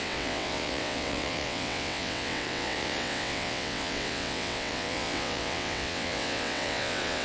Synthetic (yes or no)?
yes